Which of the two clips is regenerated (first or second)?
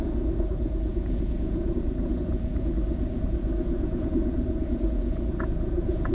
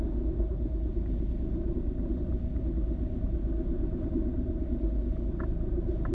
first